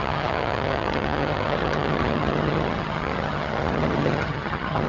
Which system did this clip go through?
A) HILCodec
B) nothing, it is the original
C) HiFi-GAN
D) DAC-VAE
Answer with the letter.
C